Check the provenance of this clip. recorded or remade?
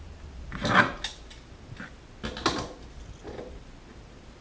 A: recorded